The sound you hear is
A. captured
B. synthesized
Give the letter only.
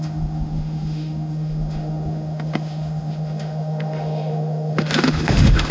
B